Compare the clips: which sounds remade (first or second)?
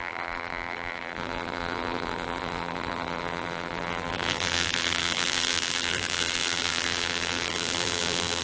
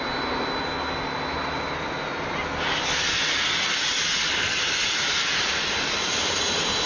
first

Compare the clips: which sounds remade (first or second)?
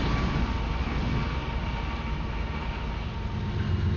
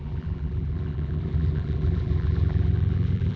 second